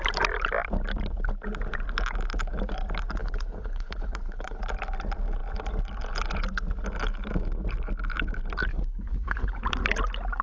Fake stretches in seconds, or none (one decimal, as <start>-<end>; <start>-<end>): 3.2-4.6; 8.7-9.6